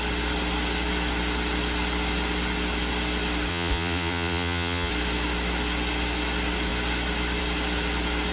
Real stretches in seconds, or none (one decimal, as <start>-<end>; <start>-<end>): 0.0-3.5; 4.9-8.3